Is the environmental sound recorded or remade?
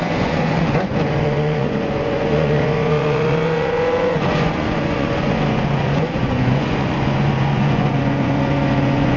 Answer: remade